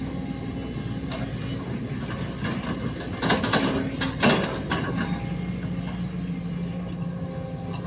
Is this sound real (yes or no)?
yes